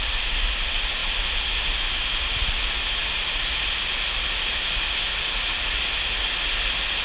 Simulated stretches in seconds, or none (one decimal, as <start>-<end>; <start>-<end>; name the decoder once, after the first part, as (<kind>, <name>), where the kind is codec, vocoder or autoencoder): none